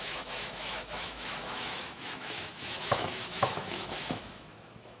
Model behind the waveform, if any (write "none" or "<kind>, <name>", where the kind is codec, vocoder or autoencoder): autoencoder, DAC-VAE